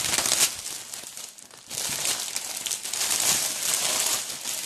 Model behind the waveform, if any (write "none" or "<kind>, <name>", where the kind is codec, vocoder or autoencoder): none